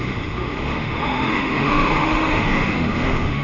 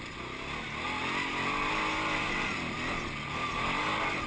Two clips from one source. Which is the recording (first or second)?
second